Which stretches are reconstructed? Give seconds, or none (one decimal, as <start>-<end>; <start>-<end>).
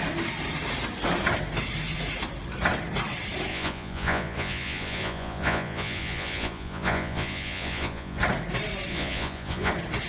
3.5-8.2; 8.9-9.7